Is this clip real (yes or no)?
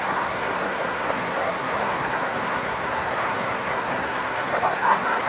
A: no